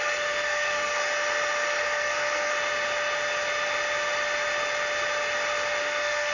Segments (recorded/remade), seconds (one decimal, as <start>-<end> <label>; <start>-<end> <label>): 0.0-1.0 remade; 1.0-1.8 recorded; 1.8-2.5 remade; 2.5-5.8 recorded; 5.8-6.3 remade